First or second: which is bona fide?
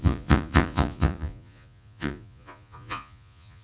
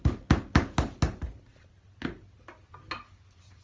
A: second